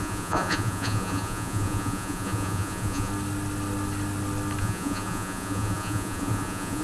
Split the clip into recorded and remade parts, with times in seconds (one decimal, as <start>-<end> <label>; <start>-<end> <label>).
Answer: 0.0-3.1 remade; 3.1-4.6 recorded; 4.6-6.8 remade